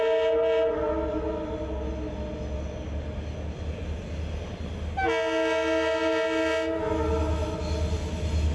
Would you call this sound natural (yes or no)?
yes